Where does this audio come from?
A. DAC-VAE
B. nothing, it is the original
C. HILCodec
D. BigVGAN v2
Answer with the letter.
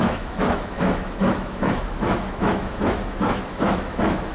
A